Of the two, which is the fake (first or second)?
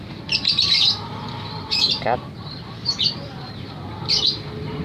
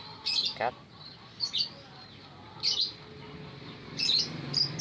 first